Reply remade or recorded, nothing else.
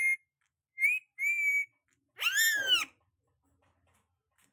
recorded